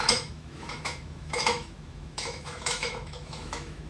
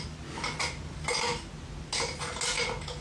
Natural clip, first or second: second